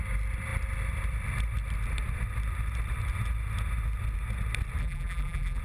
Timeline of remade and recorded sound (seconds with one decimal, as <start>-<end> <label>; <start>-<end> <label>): 0.0-4.8 recorded; 4.8-5.6 remade